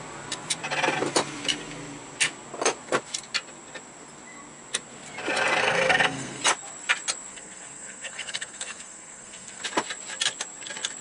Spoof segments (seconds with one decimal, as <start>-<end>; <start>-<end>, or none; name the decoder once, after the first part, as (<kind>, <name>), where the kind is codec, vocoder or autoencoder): 5.6-6.4 (codec, SNAC); 7.3-9.6